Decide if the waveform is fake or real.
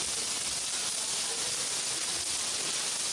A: real